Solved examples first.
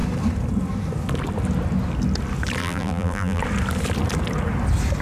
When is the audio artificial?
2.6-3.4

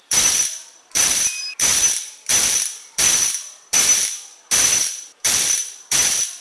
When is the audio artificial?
0.0-6.4

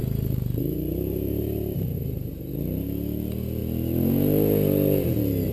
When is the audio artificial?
0.0-2.5

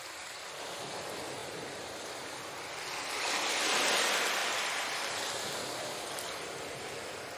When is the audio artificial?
1.4-2.3; 4.4-5.2

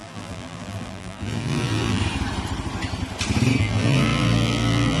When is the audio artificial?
0.0-2.0; 3.6-5.0

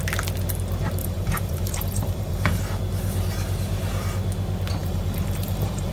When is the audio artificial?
1.0-2.6; 4.8-5.9

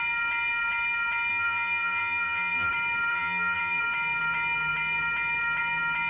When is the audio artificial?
1.3-2.7; 3.1-3.8